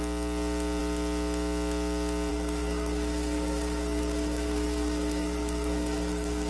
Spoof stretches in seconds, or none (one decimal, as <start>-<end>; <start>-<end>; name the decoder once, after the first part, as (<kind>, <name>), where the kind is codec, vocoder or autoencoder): 2.3-6.5 (codec, SNAC)